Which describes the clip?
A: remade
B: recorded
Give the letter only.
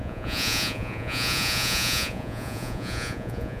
A